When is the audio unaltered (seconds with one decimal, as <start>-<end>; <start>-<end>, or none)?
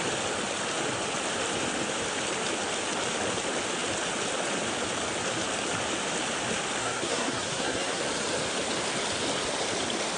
0.0-6.8; 8.0-10.2